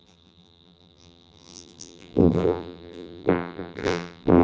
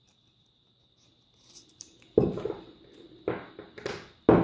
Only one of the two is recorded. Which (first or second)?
second